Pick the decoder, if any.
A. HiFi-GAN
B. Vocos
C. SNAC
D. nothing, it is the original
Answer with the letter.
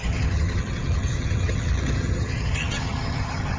A